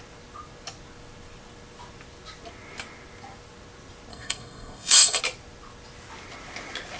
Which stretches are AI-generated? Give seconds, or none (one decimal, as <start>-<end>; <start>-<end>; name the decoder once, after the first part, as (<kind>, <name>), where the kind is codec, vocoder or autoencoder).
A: 4.1-5.2 (codec, SNAC)